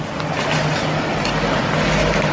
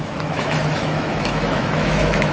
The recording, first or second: first